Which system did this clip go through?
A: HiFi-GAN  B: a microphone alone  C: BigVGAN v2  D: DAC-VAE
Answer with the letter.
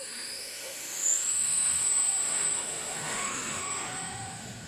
D